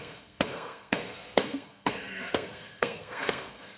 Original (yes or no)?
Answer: no